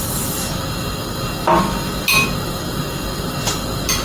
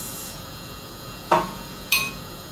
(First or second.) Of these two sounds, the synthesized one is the second